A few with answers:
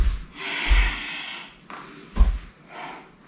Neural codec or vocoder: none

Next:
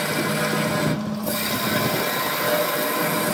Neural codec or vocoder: none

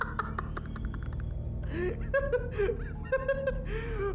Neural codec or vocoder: none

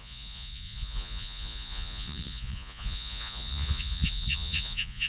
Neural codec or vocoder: vocoder, Vocos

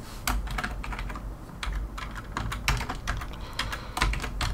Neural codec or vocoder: none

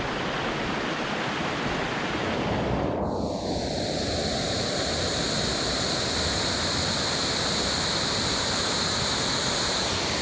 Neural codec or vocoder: none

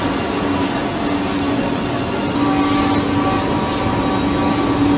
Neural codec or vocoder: none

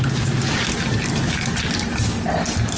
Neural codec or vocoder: none